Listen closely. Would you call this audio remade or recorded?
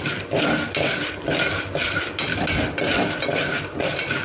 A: recorded